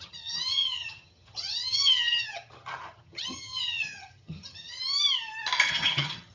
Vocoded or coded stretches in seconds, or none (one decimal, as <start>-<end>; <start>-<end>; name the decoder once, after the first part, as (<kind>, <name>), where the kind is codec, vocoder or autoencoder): 0.0-4.8 (vocoder, HiFi-GAN); 5.7-6.3